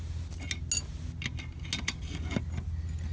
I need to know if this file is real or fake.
real